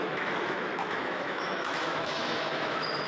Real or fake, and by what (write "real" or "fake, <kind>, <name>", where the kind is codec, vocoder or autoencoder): fake, autoencoder, DAC-VAE